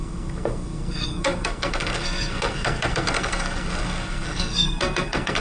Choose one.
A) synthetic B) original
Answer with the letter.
A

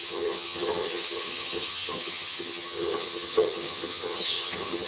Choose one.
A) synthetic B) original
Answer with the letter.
A